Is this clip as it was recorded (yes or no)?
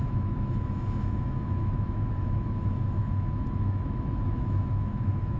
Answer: no